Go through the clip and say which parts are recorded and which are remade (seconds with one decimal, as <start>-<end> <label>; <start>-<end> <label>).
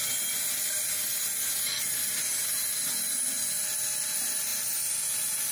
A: 0.0-5.5 recorded